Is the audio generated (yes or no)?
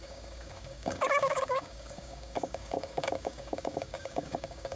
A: yes